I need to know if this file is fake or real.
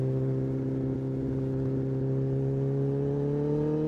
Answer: real